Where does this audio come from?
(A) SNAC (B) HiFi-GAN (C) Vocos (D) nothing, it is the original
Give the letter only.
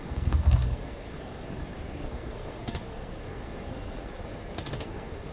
A